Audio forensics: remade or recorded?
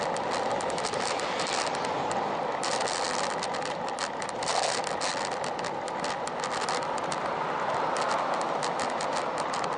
recorded